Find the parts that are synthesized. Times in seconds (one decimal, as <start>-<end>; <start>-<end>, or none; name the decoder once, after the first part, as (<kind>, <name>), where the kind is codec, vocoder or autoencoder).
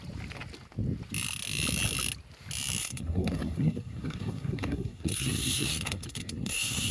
2.8-6.9 (codec, SNAC)